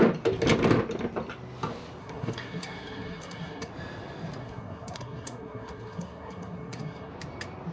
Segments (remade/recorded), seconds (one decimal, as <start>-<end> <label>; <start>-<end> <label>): 0.0-2.0 recorded; 2.0-3.7 remade; 3.7-4.4 recorded; 4.4-7.1 remade; 7.1-7.7 recorded